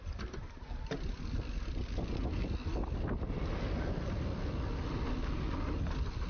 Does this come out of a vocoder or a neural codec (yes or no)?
no